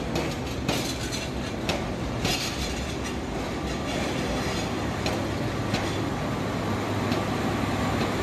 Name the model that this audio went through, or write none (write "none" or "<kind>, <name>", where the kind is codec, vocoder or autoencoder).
none